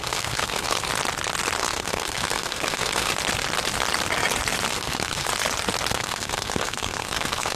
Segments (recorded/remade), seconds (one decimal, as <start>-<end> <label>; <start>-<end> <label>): 0.0-0.9 remade; 0.9-1.6 recorded; 1.6-3.1 remade; 3.1-4.7 recorded; 4.7-5.3 remade; 5.3-5.9 recorded; 5.9-7.6 remade

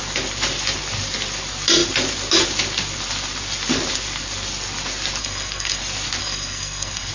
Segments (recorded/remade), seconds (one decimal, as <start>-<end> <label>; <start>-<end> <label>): 0.0-5.2 recorded; 5.2-5.8 remade; 5.8-6.2 recorded; 6.2-7.1 remade

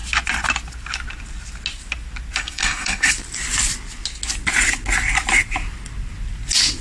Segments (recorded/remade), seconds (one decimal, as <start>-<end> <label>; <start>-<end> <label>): 0.0-2.4 recorded; 2.4-3.1 remade; 3.1-6.8 recorded

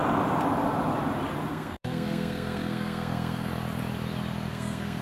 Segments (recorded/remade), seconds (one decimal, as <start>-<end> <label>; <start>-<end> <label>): 0.0-1.5 recorded; 1.5-3.5 remade; 3.5-4.5 recorded; 4.5-5.0 remade

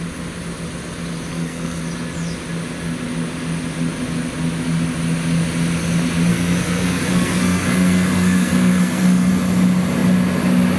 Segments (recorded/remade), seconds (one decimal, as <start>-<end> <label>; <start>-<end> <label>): 0.0-1.3 recorded; 1.3-1.8 remade; 1.8-6.3 recorded; 6.3-9.3 remade; 9.3-10.8 recorded

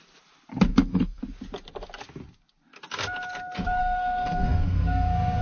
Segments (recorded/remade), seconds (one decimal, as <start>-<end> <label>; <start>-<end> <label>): 0.0-0.7 recorded; 0.7-1.2 remade; 1.2-3.8 recorded; 3.8-5.4 remade